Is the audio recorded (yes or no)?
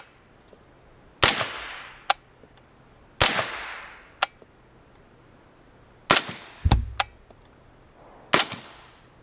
yes